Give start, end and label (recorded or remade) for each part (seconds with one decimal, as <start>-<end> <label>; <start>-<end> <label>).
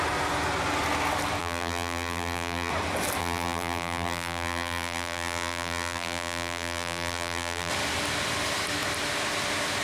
0.0-1.4 recorded; 1.4-2.7 remade; 2.7-3.2 recorded; 3.2-7.7 remade; 7.7-9.8 recorded